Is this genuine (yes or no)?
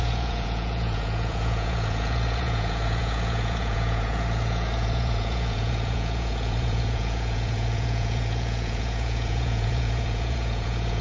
no